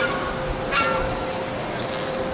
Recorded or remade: recorded